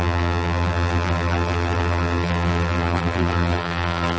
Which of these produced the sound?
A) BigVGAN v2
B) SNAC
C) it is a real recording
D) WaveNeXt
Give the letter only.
A